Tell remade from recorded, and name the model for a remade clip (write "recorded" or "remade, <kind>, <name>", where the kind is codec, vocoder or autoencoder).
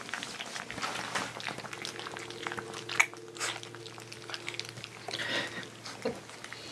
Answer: recorded